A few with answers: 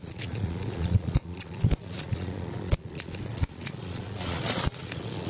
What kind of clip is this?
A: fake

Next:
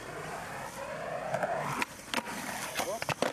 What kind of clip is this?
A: real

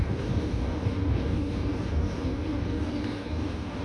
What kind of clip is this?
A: fake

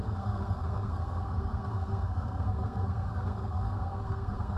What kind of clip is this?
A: fake